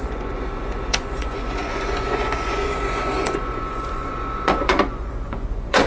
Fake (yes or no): yes